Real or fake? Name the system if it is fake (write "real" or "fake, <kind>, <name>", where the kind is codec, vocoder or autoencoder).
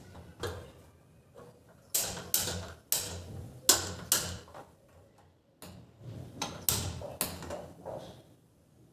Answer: real